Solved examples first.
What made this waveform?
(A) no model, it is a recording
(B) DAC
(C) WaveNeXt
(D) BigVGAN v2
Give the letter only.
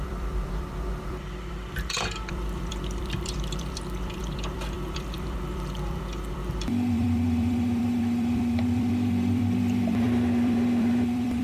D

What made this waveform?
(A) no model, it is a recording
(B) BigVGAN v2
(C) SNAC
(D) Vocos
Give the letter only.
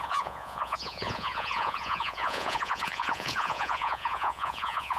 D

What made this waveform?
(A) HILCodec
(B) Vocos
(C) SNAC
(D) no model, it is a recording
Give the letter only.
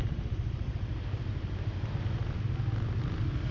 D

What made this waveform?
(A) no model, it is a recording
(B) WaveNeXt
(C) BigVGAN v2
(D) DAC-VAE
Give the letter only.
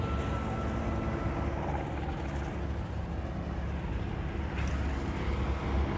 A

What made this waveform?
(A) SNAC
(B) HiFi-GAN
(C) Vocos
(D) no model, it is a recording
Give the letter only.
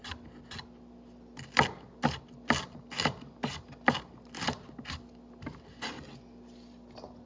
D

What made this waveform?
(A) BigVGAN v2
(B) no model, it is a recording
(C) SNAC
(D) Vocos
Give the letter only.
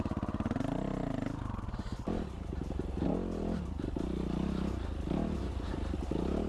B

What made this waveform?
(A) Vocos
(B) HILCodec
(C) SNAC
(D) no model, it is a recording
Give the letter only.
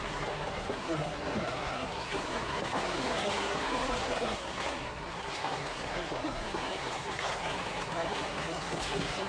C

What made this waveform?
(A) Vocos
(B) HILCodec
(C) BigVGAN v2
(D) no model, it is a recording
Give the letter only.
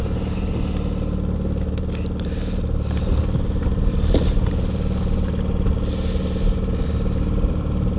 D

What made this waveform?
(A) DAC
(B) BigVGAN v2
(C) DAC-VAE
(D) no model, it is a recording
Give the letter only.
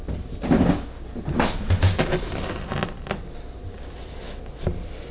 D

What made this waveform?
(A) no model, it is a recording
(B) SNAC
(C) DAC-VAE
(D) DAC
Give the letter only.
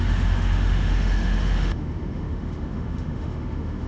C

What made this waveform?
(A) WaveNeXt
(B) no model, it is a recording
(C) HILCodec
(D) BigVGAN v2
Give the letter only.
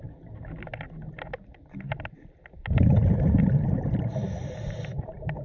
B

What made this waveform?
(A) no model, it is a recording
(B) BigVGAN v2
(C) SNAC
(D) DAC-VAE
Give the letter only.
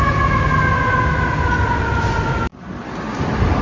A